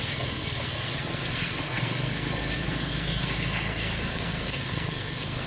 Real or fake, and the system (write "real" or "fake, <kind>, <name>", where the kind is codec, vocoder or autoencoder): fake, codec, SNAC